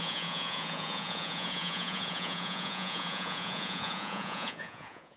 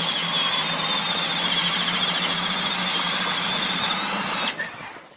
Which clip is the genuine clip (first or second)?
second